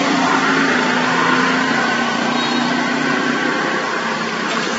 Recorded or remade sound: recorded